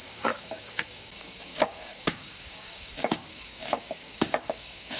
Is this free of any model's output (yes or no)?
no